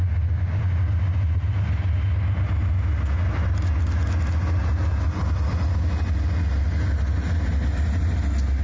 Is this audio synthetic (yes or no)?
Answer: no